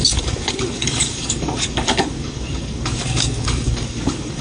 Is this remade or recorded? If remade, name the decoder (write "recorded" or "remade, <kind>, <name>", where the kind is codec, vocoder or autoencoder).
remade, codec, DAC